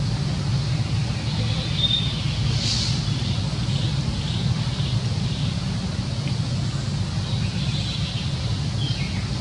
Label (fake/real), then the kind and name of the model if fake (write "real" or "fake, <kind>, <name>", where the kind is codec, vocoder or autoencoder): real